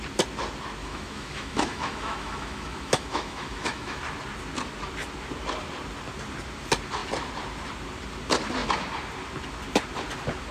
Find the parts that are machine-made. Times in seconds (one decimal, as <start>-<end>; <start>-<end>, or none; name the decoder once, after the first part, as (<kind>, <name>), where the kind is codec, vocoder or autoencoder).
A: 0.8-4.0 (autoencoder, DAC-VAE)